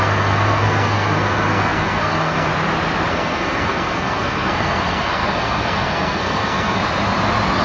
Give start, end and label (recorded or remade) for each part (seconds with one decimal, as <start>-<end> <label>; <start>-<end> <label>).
0.0-2.5 remade; 2.5-3.1 recorded; 3.1-6.8 remade; 6.8-7.6 recorded